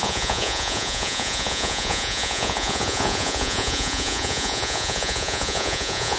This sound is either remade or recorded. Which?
remade